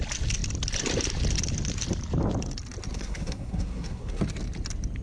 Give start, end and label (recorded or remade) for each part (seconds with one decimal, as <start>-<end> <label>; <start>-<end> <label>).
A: 0.0-2.9 recorded; 2.9-4.2 remade; 4.2-5.0 recorded